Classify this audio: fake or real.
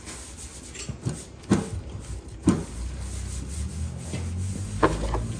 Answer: real